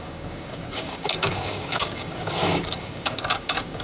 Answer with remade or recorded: remade